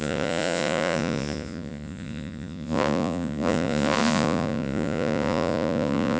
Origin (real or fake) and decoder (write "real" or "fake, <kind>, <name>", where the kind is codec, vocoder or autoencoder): fake, vocoder, Vocos